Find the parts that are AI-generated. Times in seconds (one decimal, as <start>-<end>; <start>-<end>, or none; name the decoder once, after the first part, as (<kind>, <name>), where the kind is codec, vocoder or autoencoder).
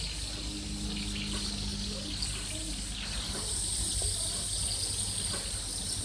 none